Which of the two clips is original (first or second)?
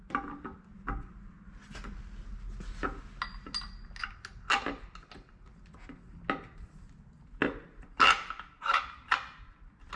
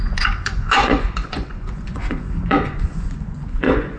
first